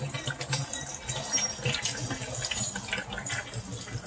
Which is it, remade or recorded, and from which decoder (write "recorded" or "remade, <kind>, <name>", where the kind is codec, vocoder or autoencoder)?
recorded